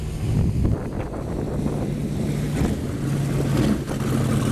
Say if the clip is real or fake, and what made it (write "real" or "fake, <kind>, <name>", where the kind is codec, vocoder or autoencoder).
real